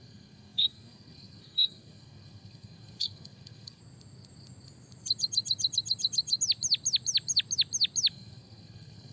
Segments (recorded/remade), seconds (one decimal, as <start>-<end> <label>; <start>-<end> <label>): 0.0-3.8 remade; 3.8-8.1 recorded; 8.1-9.1 remade